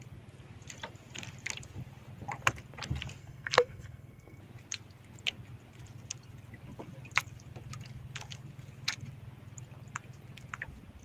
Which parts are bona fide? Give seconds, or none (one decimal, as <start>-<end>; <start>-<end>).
0.0-3.2; 4.4-11.0